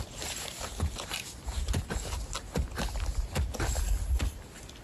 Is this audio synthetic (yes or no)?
no